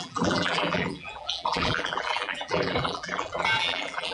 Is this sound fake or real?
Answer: fake